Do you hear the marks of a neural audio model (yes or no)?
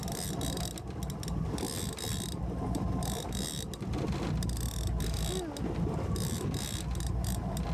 no